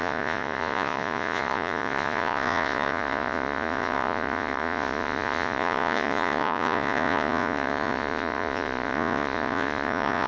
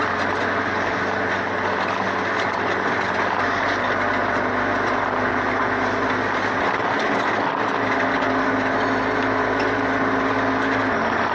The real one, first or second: second